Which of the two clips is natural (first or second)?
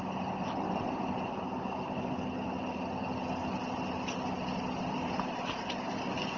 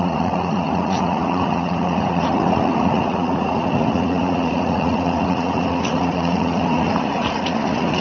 first